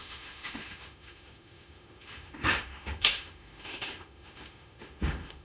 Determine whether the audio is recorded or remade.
remade